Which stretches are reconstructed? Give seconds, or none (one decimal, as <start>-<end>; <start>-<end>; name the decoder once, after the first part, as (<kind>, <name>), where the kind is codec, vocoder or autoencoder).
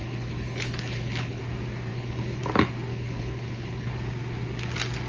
0.0-1.4 (codec, HILCodec); 1.9-2.4; 2.9-3.9